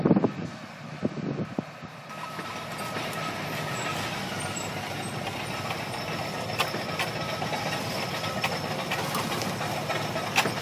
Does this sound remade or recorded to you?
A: recorded